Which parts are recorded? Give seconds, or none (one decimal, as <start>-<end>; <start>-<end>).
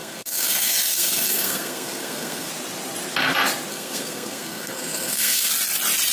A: 2.5-3.7; 5.5-6.1